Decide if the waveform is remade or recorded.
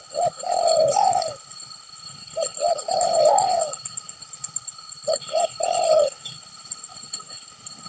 remade